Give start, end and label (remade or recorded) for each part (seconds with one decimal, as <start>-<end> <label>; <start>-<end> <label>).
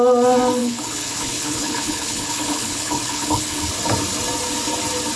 0.0-0.6 recorded; 0.6-3.7 remade; 3.7-5.2 recorded